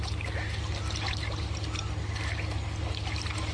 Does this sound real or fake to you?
real